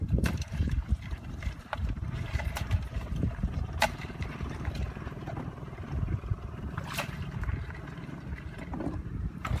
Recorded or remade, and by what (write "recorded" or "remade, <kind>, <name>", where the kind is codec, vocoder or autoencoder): remade, vocoder, BigVGAN v2